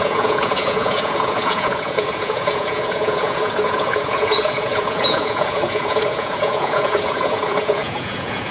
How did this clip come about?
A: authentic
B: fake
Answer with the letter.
B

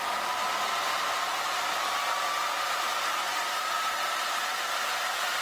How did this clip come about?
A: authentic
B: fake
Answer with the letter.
A